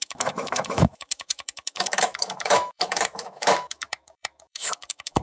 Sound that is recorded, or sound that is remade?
remade